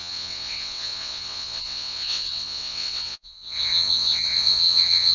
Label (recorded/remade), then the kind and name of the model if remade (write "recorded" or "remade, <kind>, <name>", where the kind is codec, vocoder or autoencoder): remade, vocoder, WaveNeXt